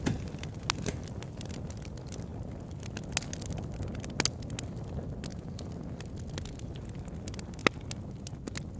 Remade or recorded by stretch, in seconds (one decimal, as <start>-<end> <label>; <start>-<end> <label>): 0.0-8.8 recorded